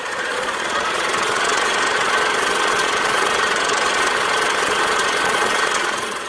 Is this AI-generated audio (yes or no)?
yes